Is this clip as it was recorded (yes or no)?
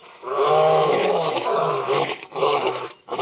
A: no